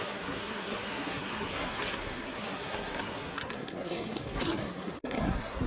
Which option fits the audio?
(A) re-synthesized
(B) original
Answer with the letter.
A